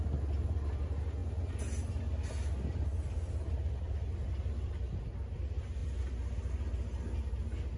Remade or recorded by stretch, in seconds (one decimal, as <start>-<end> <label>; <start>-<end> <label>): 0.0-7.8 recorded